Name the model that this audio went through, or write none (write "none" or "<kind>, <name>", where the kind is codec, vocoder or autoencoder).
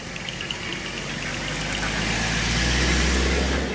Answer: none